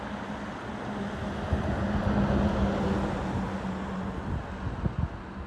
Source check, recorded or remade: recorded